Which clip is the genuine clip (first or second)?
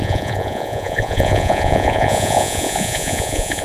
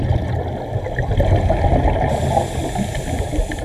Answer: second